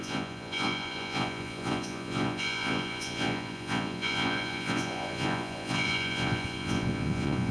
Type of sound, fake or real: fake